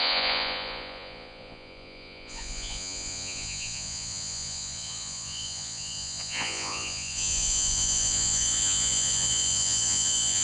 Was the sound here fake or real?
fake